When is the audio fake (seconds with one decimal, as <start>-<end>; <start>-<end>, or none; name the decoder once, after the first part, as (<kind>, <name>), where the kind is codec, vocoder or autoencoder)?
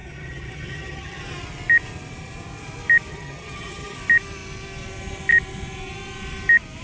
0.0-1.2 (vocoder, HiFi-GAN); 3.1-4.0